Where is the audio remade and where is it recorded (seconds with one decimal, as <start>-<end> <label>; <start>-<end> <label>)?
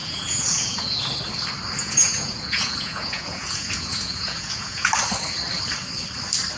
0.0-1.0 remade; 1.0-1.8 recorded; 1.8-4.9 remade; 4.9-6.6 recorded